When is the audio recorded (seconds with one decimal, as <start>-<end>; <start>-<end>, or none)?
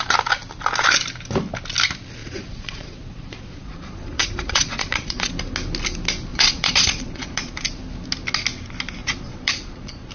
0.0-2.2; 5.3-6.3; 7.5-9.0